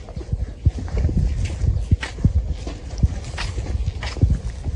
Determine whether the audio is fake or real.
real